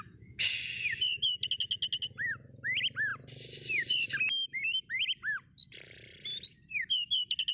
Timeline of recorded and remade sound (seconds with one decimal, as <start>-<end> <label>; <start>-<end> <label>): 0.0-7.5 recorded